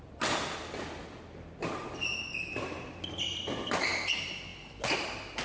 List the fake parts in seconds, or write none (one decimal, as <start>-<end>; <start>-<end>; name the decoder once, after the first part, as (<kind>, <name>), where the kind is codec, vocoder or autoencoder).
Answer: none